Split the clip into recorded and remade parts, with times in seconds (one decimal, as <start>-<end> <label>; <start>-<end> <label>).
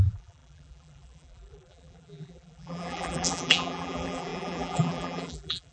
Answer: 0.0-5.7 remade